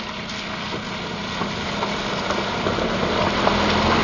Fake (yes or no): no